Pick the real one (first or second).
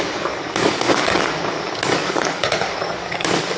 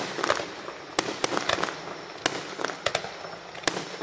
second